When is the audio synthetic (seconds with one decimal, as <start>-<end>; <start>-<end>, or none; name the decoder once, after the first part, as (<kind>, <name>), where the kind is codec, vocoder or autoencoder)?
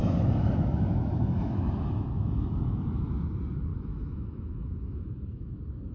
0.0-3.2 (autoencoder, DAC-VAE); 3.7-5.5